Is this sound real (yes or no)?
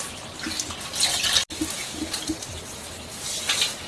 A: yes